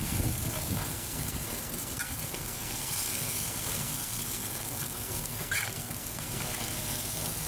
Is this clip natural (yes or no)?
no